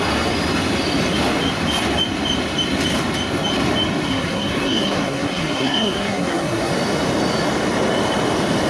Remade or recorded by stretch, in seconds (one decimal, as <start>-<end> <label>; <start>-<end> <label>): 0.0-4.1 recorded; 4.1-6.7 remade; 6.7-8.7 recorded